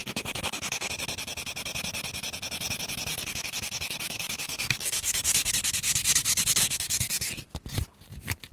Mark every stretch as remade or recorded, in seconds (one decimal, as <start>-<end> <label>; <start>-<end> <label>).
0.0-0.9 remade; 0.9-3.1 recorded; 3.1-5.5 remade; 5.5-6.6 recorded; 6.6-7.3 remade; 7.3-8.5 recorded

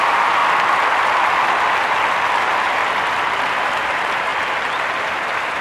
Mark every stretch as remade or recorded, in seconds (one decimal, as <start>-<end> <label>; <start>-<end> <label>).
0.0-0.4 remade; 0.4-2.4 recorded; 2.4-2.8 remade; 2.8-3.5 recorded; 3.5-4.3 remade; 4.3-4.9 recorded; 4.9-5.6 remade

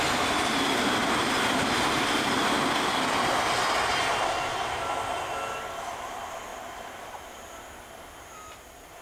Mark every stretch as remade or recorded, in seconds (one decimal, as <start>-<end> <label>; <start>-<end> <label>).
0.0-1.0 recorded; 1.0-3.1 remade; 3.1-9.0 recorded

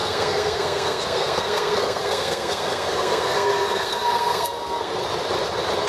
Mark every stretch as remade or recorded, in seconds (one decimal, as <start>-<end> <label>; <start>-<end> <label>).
0.0-5.0 remade; 5.0-5.9 recorded

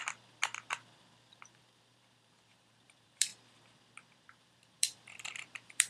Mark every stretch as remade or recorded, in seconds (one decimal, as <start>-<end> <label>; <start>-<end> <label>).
0.0-1.3 recorded; 1.3-3.3 remade; 3.3-4.3 recorded; 4.3-5.9 remade

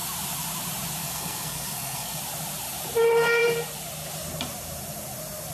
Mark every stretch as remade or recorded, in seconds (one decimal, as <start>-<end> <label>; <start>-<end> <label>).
0.0-1.0 recorded; 1.0-2.2 remade; 2.2-5.5 recorded

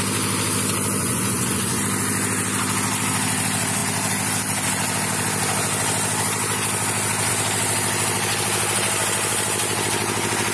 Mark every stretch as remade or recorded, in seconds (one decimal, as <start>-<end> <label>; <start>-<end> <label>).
0.0-1.0 recorded; 1.0-1.8 remade; 1.8-10.5 recorded